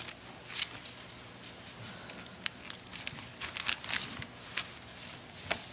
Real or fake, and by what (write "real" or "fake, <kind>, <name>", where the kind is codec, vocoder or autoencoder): real